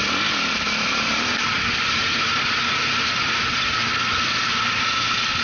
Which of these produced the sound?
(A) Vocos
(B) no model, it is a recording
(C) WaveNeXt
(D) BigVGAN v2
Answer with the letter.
B